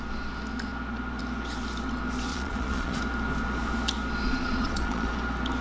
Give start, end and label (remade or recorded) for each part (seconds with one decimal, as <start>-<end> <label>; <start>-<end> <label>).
0.0-2.3 recorded; 2.3-3.0 remade; 3.0-4.3 recorded; 4.3-5.1 remade; 5.1-5.6 recorded